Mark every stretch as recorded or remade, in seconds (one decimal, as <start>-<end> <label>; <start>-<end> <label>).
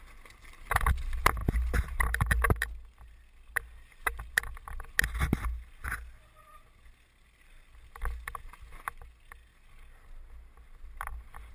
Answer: 0.0-11.5 recorded